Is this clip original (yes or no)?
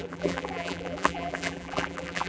no